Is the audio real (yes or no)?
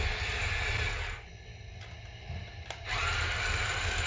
yes